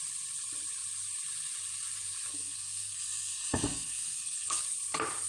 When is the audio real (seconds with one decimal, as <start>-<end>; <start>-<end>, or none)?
0.0-2.3; 4.6-5.3